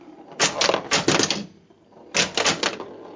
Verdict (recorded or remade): recorded